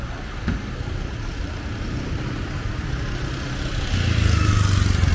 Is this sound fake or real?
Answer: real